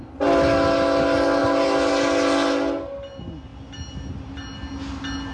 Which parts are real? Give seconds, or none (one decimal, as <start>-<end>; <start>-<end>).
0.0-5.3